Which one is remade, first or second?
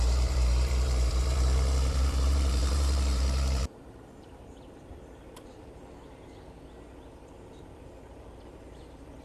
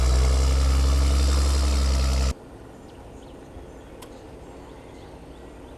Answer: first